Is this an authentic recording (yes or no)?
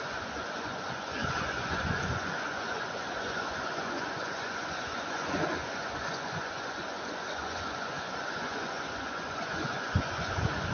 no